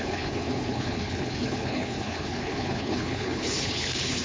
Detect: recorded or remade remade